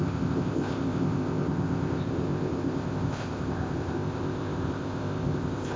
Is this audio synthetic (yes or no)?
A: yes